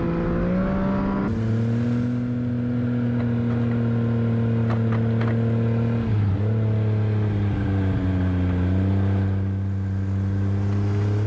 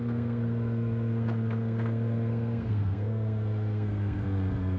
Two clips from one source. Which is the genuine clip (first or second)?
first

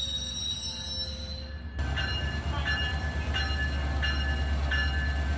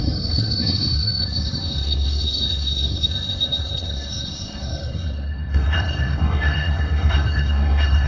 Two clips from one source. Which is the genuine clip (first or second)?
first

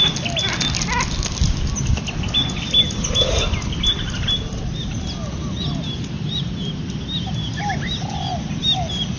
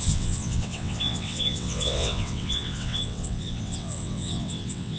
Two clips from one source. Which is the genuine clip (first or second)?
first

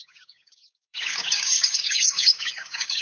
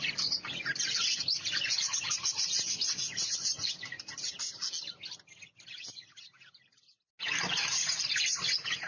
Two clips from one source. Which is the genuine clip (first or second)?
second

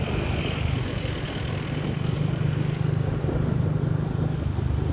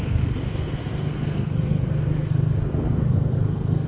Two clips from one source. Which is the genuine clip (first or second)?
first